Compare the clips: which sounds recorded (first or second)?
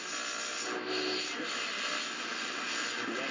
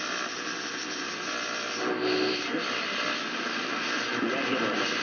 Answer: first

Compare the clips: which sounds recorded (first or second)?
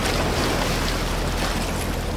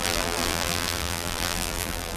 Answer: first